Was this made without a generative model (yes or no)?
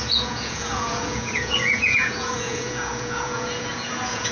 no